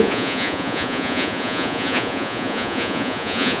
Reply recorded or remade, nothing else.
remade